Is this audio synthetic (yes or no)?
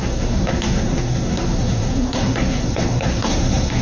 yes